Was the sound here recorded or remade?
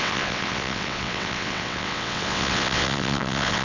remade